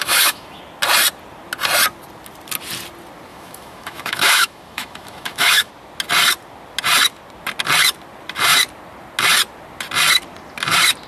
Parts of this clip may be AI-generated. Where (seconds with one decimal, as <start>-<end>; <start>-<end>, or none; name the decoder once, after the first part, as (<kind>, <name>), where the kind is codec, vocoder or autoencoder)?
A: 0.0-0.6 (autoencoder, DAC-VAE); 3.3-5.7